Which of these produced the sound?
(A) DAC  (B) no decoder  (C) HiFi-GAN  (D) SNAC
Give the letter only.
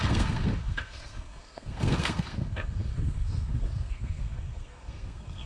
D